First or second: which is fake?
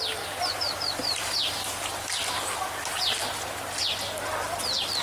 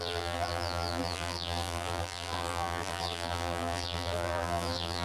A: second